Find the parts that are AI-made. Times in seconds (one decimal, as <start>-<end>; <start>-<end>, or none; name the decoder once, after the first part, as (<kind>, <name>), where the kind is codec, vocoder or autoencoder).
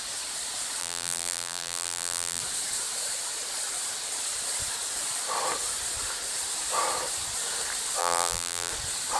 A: 0.8-2.4 (vocoder, BigVGAN v2); 8.0-8.7